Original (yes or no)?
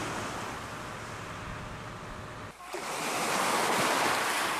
yes